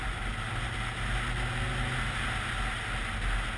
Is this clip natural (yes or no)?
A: yes